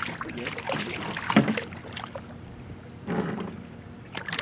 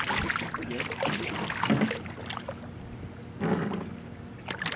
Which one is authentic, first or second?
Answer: second